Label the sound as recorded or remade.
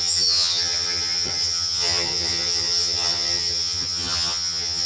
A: remade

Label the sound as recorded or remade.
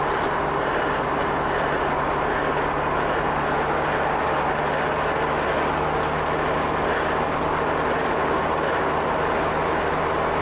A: recorded